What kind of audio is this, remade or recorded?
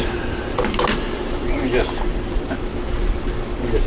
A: recorded